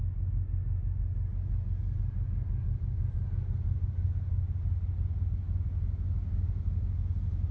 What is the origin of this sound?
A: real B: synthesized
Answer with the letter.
A